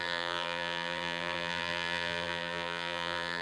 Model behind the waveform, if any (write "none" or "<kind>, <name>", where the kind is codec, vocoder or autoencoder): vocoder, BigVGAN v2